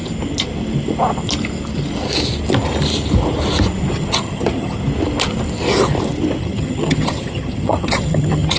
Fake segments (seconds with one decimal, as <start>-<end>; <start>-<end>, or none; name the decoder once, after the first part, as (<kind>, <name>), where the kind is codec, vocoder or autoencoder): 3.9-4.8 (vocoder, HiFi-GAN); 6.4-8.6